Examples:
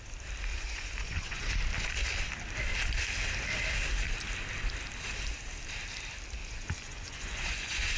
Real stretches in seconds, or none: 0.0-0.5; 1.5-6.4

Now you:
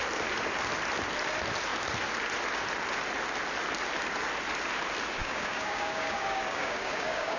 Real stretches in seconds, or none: 0.0-5.2